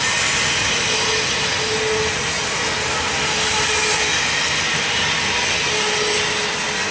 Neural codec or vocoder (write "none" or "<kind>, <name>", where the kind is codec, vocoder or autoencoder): none